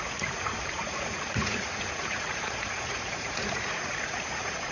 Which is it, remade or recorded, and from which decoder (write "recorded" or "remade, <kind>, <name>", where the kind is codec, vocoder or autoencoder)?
remade, vocoder, Vocos